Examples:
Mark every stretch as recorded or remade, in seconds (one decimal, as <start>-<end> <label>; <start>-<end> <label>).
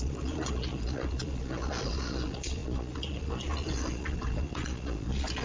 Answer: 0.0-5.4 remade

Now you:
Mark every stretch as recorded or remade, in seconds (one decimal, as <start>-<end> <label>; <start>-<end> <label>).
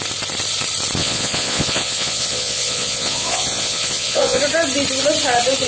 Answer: 0.0-1.0 recorded; 1.0-4.4 remade; 4.4-5.7 recorded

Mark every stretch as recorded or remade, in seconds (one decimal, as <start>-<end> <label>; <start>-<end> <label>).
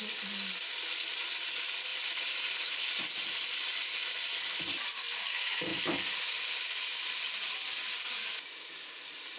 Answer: 0.0-1.9 recorded; 1.9-2.8 remade; 2.8-9.4 recorded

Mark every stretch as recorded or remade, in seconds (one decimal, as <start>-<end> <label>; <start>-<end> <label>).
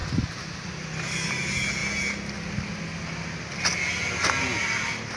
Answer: 0.0-5.2 recorded